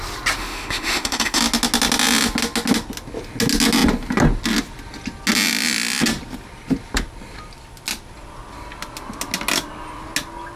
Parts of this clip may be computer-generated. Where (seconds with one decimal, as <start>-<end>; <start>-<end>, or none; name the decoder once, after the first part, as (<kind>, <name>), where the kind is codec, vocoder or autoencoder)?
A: 0.4-1.4 (autoencoder, DAC-VAE)